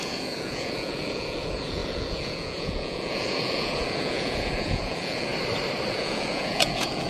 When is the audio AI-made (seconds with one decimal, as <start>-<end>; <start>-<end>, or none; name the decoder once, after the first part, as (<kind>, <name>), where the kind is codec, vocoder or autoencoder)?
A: 0.0-5.3 (vocoder, Vocos); 5.9-7.1